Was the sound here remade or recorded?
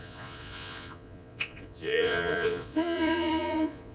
remade